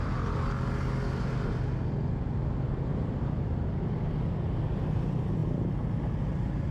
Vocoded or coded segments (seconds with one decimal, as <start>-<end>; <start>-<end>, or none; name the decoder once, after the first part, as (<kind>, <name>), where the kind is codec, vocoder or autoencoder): none